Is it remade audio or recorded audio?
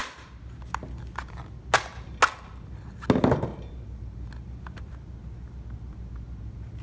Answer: recorded